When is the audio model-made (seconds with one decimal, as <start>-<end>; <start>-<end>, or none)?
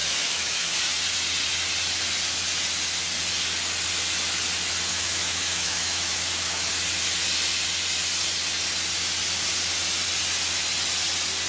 0.0-0.8; 4.9-6.7